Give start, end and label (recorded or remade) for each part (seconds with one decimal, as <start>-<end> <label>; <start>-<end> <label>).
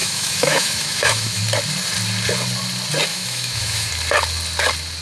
0.0-1.4 remade; 1.4-3.1 recorded; 3.1-3.9 remade; 3.9-5.0 recorded